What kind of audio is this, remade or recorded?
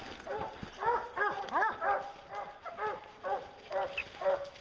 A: recorded